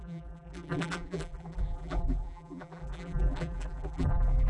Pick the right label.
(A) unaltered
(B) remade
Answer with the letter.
B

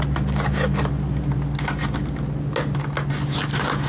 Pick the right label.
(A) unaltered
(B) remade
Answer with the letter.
A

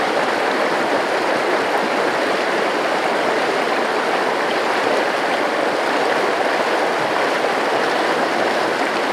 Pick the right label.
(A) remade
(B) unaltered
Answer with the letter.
B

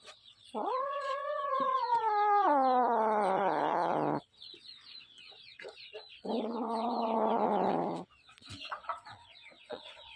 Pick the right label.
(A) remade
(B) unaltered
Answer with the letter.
A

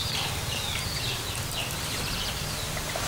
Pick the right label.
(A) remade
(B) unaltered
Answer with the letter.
B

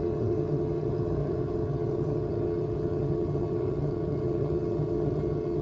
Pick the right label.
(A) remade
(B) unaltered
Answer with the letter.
A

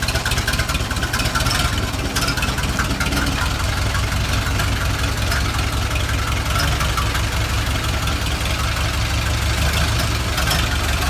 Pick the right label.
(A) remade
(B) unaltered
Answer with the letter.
B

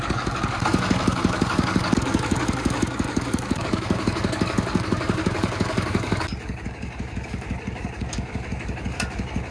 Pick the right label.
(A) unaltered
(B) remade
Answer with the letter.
B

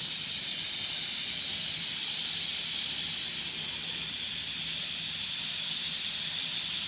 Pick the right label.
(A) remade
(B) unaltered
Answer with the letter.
B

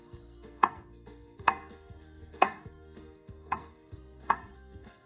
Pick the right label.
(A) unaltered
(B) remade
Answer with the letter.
B